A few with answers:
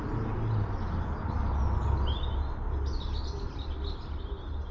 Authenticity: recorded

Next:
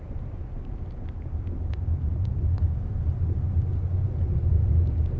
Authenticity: recorded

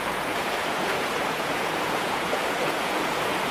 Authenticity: remade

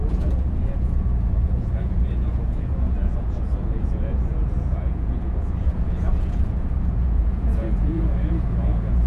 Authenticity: remade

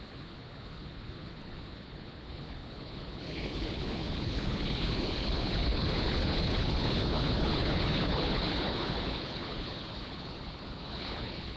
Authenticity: remade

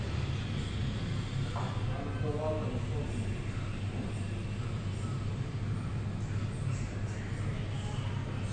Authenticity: recorded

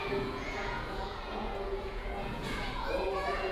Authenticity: remade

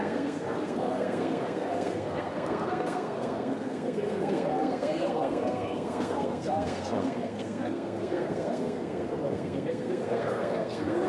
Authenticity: remade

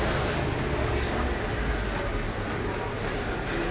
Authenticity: recorded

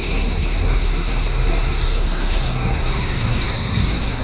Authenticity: remade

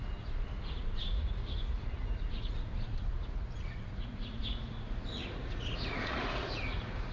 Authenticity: remade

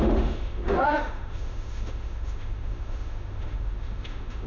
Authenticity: remade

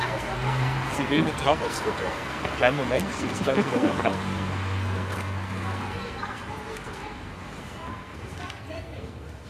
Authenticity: remade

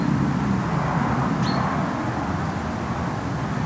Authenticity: recorded